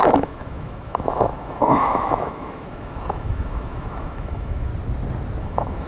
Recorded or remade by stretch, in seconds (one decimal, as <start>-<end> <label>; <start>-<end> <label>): 0.0-4.7 remade; 4.7-5.4 recorded; 5.4-5.9 remade